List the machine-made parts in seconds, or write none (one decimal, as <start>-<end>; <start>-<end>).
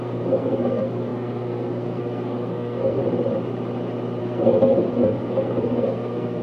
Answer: 0.0-3.0; 4.2-6.4